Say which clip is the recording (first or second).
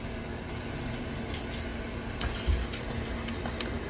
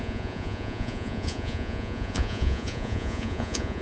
first